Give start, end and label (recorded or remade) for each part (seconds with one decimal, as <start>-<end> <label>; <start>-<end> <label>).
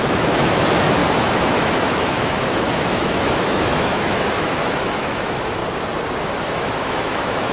0.0-5.6 remade; 5.6-6.4 recorded; 6.4-7.5 remade